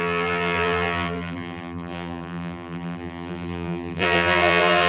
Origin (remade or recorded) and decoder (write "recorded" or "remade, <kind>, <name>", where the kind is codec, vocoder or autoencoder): remade, vocoder, BigVGAN v2